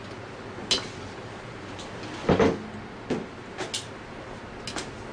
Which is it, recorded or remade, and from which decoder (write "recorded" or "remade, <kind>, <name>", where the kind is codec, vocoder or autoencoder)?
recorded